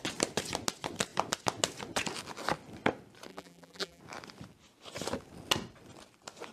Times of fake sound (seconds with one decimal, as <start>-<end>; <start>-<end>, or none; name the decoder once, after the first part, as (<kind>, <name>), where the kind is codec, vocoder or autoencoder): 3.3-4.0 (vocoder, BigVGAN v2)